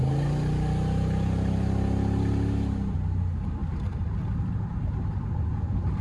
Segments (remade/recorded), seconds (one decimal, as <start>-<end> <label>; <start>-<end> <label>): 0.0-6.0 recorded

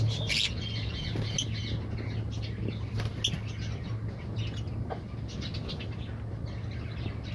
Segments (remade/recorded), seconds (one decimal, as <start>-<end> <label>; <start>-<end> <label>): 0.0-7.3 recorded

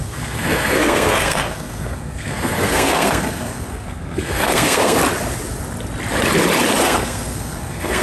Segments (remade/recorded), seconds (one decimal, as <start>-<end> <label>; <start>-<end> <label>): 0.0-5.0 remade; 5.0-6.8 recorded; 6.8-8.0 remade

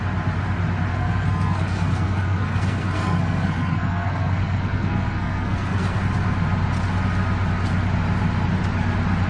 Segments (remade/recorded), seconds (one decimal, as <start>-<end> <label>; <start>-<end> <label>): 0.0-0.9 recorded; 0.9-6.0 remade; 6.0-9.3 recorded